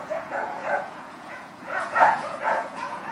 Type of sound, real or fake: fake